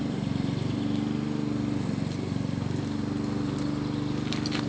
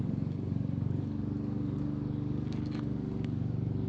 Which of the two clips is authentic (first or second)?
first